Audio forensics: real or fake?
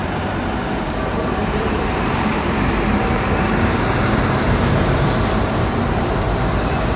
fake